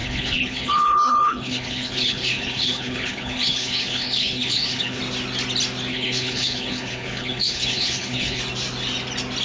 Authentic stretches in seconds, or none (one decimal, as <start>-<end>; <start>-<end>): 5.0-5.9; 8.4-9.4